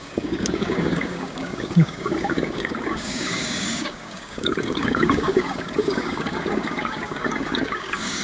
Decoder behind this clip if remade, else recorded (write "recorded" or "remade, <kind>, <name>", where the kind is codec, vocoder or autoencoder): remade, codec, DAC